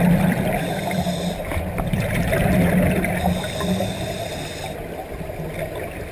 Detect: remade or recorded recorded